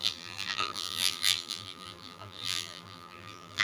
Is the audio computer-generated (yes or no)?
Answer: yes